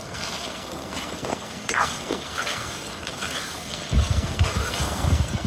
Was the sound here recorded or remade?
remade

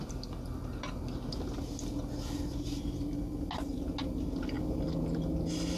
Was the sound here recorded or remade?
recorded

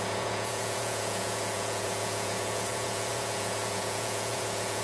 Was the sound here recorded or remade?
remade